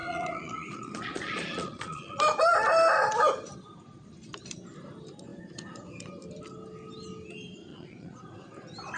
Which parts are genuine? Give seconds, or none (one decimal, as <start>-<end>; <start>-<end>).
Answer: 2.2-7.7; 8.2-9.0